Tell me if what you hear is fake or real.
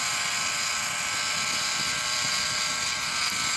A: real